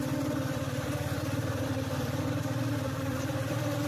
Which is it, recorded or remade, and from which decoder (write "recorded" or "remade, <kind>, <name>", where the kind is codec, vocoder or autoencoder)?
remade, vocoder, BigVGAN v2